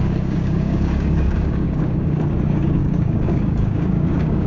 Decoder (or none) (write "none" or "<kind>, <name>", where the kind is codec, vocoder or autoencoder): codec, DAC